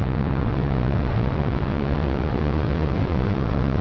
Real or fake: fake